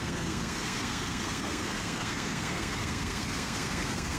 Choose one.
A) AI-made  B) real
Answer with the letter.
A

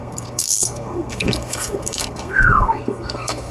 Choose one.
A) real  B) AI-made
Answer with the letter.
B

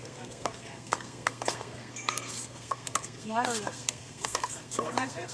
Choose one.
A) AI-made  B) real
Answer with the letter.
A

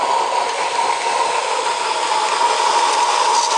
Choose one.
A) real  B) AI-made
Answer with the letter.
A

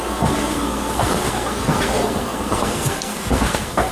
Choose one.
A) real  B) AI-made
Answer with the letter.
B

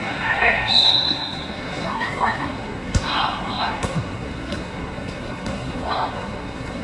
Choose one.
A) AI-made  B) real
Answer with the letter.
A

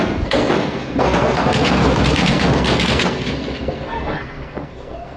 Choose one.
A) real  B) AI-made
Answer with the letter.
B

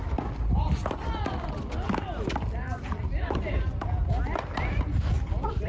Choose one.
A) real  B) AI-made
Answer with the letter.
A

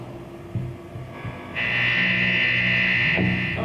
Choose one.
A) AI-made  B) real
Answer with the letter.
B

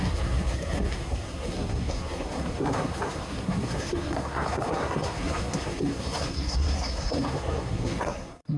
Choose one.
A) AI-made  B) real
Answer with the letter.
A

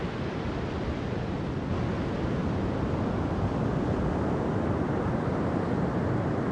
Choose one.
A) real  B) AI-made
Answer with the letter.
A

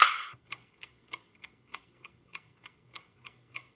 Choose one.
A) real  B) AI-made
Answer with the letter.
B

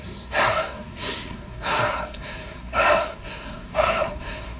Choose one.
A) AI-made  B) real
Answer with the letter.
A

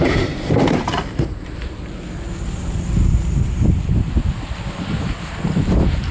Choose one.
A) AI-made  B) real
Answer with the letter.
B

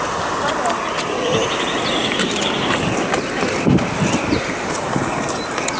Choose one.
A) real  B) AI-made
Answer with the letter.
A